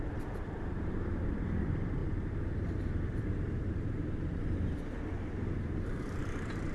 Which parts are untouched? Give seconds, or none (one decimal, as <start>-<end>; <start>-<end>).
none